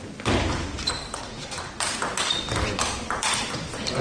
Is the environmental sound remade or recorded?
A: recorded